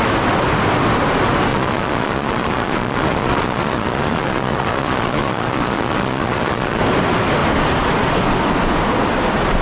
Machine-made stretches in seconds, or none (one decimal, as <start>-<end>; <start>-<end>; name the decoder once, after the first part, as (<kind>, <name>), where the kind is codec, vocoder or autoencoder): 1.5-6.8 (vocoder, Vocos)